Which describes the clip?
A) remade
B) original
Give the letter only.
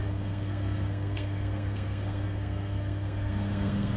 A